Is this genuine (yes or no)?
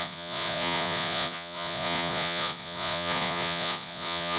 no